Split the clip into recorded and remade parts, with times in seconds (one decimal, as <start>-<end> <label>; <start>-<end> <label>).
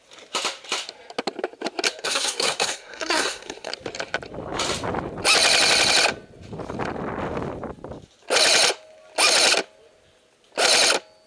0.0-2.0 recorded; 2.0-3.7 remade; 3.7-11.3 recorded